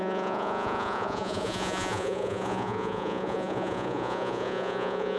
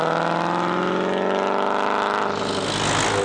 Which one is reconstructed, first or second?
first